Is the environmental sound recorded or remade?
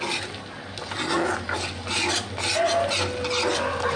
recorded